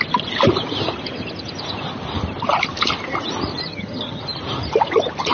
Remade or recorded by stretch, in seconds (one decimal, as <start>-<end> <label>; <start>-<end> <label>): 0.0-3.7 recorded; 3.7-4.2 remade; 4.2-5.3 recorded